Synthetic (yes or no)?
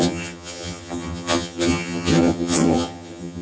yes